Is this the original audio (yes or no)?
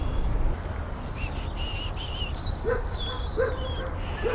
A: yes